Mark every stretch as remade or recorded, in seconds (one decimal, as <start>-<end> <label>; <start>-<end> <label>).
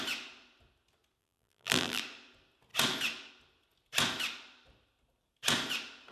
0.0-1.2 recorded; 1.2-2.0 remade; 2.0-6.1 recorded